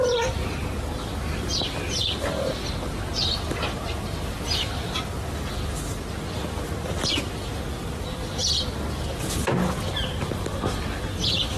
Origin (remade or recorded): recorded